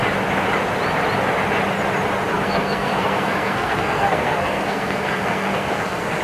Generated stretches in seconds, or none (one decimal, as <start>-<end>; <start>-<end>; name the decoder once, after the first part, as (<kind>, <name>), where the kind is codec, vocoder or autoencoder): 2.3-6.2 (codec, SNAC)